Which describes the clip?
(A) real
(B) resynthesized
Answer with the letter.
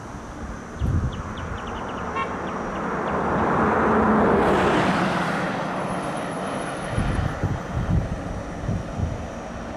A